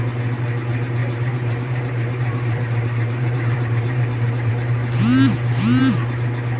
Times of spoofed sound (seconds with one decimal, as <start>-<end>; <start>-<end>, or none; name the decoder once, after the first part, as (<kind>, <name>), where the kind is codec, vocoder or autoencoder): 1.0-4.5 (vocoder, BigVGAN v2)